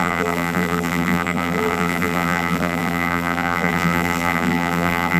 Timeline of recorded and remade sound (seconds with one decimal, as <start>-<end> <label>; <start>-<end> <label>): 0.0-5.2 remade